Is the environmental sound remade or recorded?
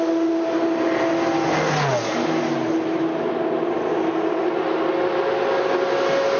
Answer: recorded